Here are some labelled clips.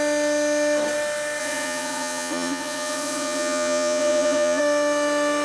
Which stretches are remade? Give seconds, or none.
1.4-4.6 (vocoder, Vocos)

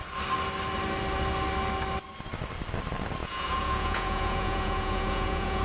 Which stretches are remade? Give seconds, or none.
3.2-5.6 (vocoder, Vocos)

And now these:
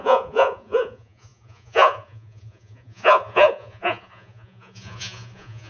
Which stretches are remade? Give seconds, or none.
0.0-5.7 (vocoder, Vocos)